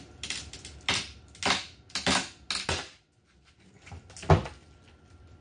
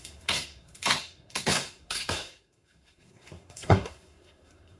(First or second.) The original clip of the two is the first